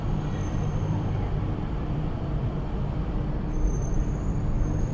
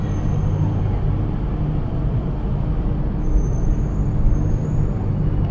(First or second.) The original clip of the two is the second